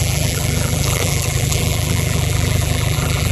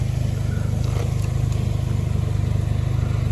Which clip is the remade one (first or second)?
first